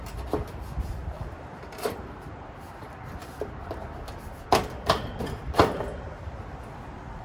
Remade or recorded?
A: remade